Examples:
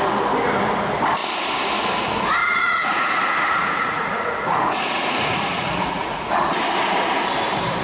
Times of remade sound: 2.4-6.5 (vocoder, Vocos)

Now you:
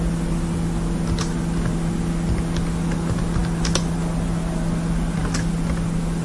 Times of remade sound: none

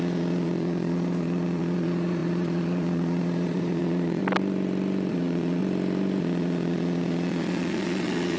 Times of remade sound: 0.0-4.2 (vocoder, Vocos); 5.1-5.6; 6.2-8.4

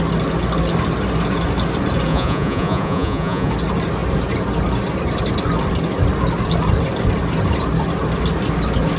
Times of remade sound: 2.1-3.5 (vocoder, Vocos)

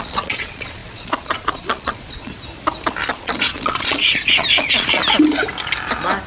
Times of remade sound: 0.0-2.3 (vocoder, Vocos); 3.1-5.0